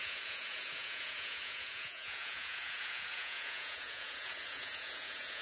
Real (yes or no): no